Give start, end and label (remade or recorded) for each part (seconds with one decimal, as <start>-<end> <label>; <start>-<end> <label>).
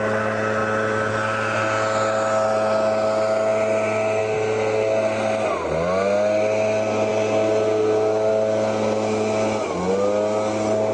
0.0-10.9 recorded